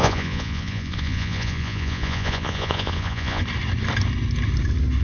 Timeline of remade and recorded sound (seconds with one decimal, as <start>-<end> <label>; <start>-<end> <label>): 0.0-3.4 remade; 3.4-5.0 recorded